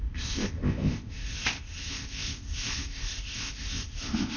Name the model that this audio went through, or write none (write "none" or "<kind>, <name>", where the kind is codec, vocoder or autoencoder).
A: codec, ZipCodec